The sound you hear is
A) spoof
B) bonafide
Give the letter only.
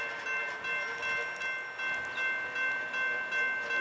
B